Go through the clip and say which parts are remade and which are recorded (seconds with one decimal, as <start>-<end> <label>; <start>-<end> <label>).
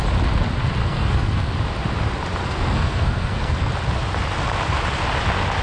0.0-0.8 recorded; 0.8-1.5 remade; 1.5-2.4 recorded; 2.4-3.7 remade; 3.7-5.6 recorded